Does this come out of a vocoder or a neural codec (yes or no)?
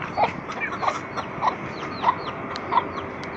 no